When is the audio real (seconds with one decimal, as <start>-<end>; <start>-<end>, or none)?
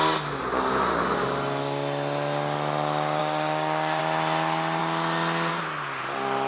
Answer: 0.0-3.2; 4.0-6.5